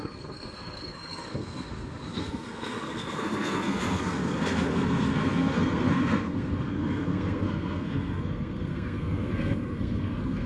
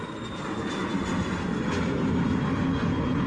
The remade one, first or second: first